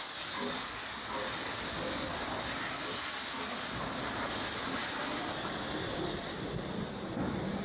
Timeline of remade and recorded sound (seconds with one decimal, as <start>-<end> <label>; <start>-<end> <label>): 0.0-2.1 recorded; 2.1-2.6 remade; 2.6-4.6 recorded; 4.6-5.4 remade; 5.4-7.6 recorded